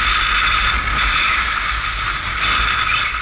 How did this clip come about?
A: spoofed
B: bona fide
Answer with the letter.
B